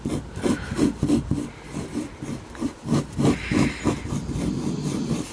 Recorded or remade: recorded